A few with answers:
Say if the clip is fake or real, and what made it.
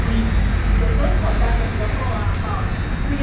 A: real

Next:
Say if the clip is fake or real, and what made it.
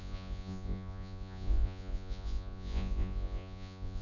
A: fake, vocoder, Vocos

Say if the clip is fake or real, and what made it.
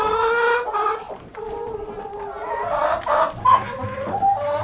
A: real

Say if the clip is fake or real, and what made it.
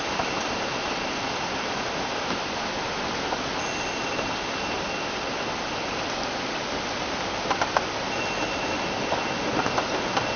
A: real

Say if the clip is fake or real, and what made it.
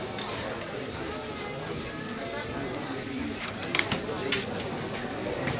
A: real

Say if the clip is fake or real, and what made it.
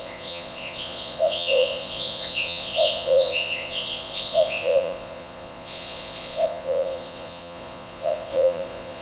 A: fake, vocoder, Vocos